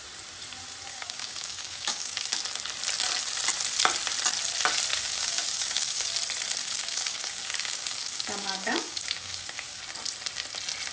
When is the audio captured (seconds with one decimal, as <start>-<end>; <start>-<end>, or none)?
0.0-0.9; 2.4-4.9; 6.1-6.6; 9.8-10.9